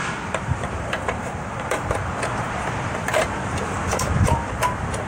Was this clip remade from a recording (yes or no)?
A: yes